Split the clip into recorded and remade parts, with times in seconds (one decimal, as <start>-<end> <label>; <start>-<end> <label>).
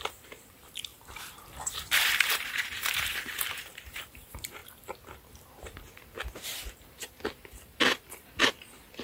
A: 0.0-4.6 remade; 4.6-5.5 recorded; 5.5-9.0 remade